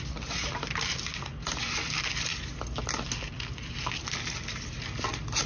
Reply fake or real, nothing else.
real